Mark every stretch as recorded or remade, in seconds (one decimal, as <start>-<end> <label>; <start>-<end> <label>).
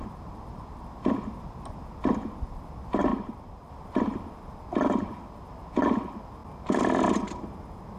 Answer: 0.0-8.0 recorded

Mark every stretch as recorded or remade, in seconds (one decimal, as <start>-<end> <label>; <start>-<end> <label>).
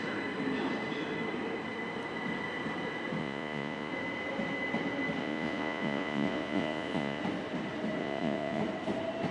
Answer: 0.0-3.2 recorded; 3.2-3.9 remade; 3.9-5.2 recorded; 5.2-7.2 remade; 7.2-8.0 recorded; 8.0-8.6 remade; 8.6-9.3 recorded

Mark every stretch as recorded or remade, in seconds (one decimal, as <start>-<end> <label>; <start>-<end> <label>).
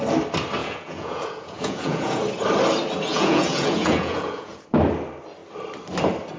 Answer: 0.0-0.6 recorded; 0.6-2.2 remade; 2.2-3.1 recorded; 3.1-4.6 remade; 4.6-6.4 recorded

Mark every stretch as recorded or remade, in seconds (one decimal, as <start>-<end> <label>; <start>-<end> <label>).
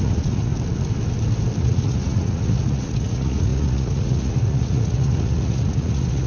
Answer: 0.0-0.5 remade; 0.5-1.6 recorded; 1.6-6.3 remade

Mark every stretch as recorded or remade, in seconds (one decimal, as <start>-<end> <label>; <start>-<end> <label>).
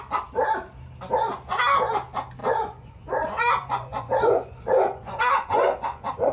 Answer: 0.0-2.4 recorded; 2.4-6.3 remade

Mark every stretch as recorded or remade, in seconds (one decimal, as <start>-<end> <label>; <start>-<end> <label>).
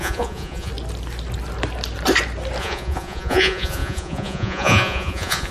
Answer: 0.0-0.7 remade; 0.7-2.6 recorded; 2.6-5.5 remade